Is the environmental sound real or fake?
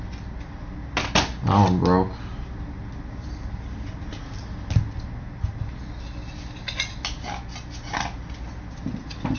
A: real